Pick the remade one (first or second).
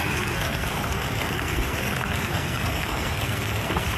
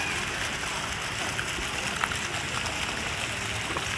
first